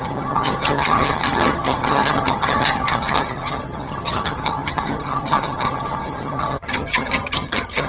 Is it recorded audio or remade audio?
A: remade